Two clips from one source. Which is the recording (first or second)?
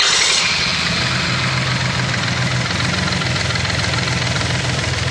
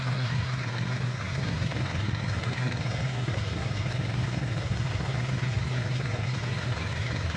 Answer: first